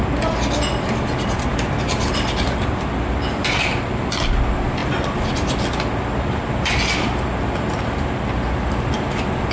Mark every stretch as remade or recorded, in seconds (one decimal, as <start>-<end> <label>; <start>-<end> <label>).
0.0-9.5 recorded